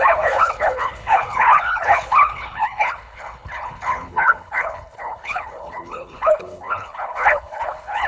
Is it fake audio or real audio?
fake